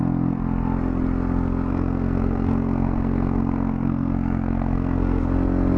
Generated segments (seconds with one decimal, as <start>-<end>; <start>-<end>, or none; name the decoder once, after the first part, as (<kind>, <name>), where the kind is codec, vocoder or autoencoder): 1.7-5.2 (codec, SNAC)